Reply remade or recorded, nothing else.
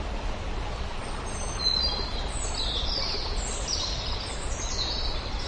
recorded